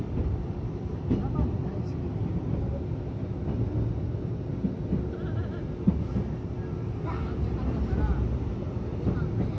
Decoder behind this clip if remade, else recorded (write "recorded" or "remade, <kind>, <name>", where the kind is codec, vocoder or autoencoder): recorded